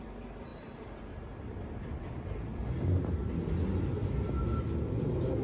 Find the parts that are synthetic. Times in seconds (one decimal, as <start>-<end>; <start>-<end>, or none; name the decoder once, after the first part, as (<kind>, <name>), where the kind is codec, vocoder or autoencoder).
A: 0.5-3.0 (vocoder, BigVGAN v2)